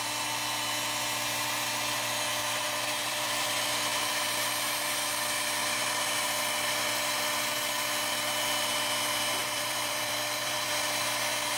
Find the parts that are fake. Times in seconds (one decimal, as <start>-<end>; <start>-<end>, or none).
2.4-3.3; 9.4-10.7